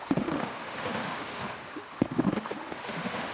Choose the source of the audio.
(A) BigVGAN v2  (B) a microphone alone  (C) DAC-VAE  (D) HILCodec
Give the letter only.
C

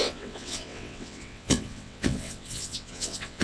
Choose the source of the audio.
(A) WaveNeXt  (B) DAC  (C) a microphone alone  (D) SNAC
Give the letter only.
A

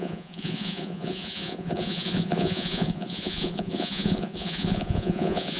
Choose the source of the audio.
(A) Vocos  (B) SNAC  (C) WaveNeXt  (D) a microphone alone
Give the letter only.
A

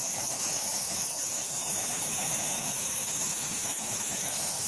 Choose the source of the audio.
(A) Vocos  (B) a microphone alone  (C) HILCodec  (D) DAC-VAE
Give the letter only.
D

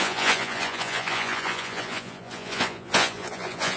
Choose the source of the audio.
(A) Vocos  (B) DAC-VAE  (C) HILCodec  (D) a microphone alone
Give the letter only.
A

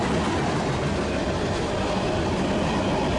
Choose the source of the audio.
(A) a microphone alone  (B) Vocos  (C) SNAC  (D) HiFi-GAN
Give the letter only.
A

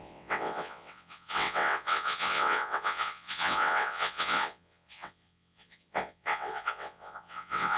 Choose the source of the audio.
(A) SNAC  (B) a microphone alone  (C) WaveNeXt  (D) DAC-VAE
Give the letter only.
C